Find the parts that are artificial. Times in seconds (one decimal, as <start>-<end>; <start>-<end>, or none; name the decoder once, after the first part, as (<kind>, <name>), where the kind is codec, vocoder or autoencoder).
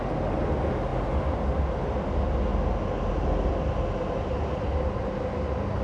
none